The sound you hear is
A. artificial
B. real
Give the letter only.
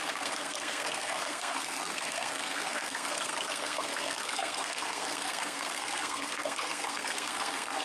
A